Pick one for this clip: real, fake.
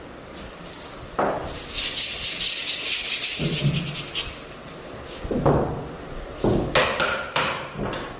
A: real